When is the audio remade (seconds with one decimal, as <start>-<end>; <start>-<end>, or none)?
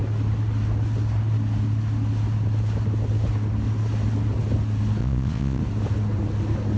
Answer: 5.0-5.6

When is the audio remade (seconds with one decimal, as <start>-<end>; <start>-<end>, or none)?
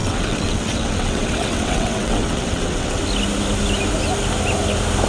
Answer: 0.0-3.0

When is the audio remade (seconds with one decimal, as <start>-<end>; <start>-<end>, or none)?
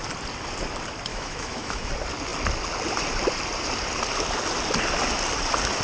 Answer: 1.1-1.9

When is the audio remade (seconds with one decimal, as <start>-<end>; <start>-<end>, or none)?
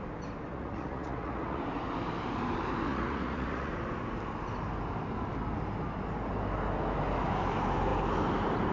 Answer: 0.5-1.6; 2.9-3.7